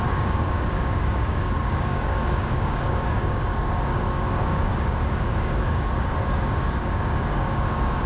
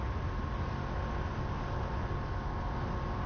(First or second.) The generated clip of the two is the first